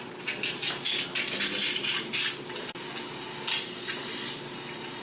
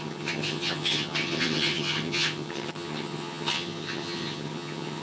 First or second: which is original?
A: first